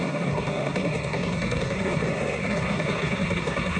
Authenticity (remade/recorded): remade